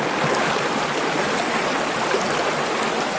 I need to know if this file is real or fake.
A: real